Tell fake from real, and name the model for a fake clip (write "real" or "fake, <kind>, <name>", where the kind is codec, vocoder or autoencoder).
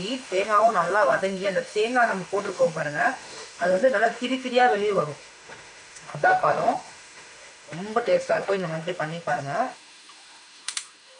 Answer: fake, autoencoder, DAC-VAE